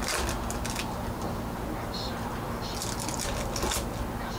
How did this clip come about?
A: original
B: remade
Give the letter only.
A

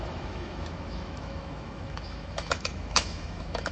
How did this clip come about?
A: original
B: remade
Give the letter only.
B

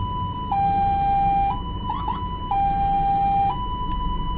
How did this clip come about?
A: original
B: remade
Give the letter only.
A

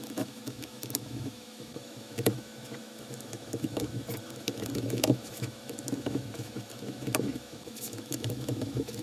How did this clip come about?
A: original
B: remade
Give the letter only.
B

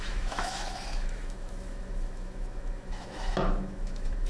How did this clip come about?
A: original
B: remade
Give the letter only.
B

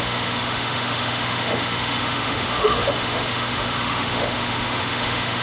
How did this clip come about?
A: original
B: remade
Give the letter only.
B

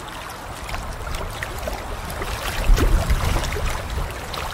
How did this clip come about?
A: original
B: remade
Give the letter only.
A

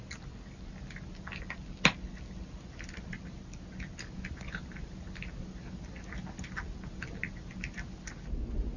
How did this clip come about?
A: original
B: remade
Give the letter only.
A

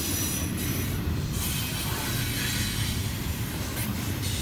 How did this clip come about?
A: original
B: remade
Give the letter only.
A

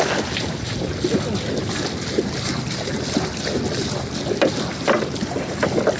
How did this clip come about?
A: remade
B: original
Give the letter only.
B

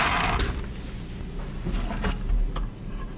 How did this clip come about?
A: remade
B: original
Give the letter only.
B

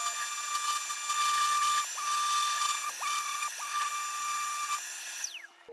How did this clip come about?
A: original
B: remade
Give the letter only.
A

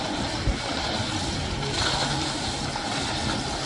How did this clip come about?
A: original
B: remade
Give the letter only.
A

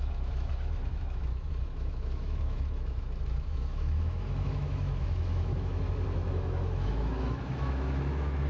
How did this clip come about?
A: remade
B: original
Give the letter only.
A